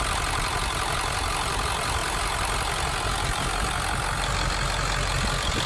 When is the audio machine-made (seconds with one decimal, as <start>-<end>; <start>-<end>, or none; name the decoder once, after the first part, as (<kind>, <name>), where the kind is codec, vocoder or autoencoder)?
none